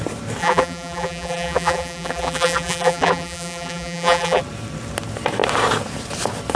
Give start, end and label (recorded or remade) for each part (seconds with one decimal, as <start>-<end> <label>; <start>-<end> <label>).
0.0-0.4 recorded; 0.4-4.4 remade; 4.4-6.6 recorded